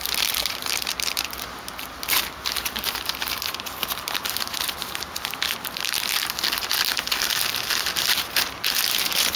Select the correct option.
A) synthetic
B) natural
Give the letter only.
B